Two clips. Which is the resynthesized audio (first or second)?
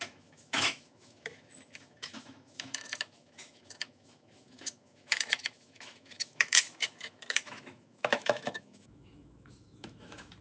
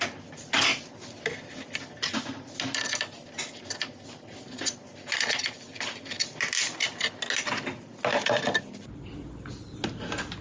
first